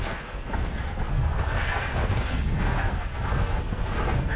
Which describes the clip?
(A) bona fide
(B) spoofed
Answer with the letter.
B